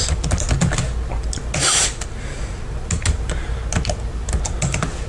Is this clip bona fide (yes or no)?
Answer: yes